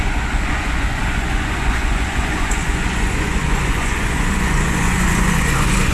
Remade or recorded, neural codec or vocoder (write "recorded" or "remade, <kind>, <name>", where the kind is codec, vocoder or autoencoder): remade, vocoder, Vocos